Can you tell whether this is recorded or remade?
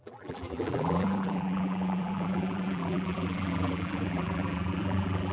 remade